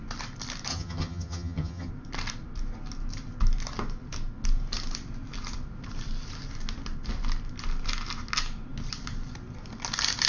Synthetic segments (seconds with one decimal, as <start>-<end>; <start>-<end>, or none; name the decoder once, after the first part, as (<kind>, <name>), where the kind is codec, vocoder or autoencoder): 0.7-1.9 (vocoder, HiFi-GAN)